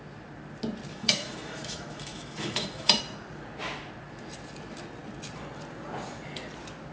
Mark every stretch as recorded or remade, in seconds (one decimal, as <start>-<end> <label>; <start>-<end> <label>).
0.0-0.9 recorded; 0.9-3.0 remade; 3.0-6.9 recorded